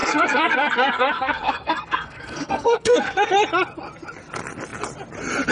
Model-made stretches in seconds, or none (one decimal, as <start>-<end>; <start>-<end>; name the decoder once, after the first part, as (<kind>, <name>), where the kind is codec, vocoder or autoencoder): 0.0-3.3 (codec, SNAC)